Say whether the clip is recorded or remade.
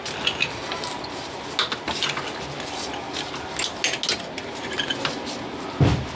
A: recorded